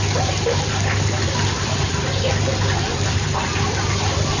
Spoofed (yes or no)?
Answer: no